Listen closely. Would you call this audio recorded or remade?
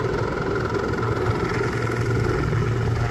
recorded